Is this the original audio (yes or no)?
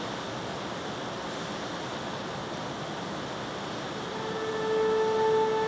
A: yes